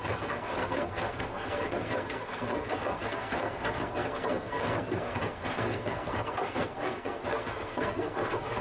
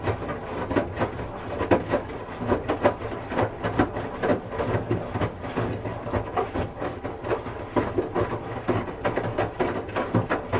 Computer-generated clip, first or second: first